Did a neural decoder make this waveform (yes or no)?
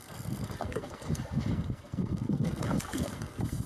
yes